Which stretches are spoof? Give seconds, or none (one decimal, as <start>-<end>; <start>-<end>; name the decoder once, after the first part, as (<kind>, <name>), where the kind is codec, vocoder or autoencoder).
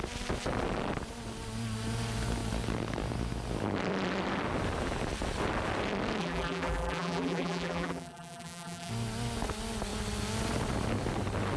6.2-8.9 (vocoder, BigVGAN v2)